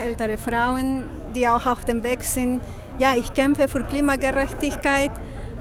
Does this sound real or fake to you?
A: fake